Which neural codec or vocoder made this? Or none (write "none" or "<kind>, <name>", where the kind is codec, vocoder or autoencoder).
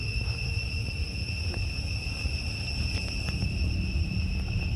none